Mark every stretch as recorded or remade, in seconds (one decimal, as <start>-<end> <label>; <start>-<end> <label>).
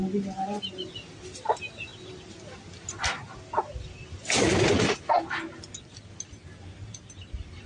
0.0-7.7 recorded